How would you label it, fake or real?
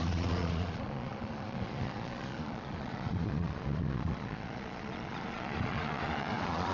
fake